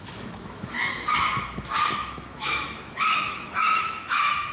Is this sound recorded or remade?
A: remade